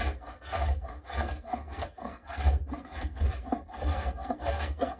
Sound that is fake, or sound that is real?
fake